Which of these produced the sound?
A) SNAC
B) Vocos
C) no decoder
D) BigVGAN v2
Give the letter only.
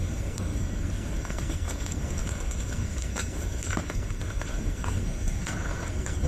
A